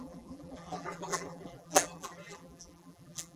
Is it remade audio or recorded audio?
remade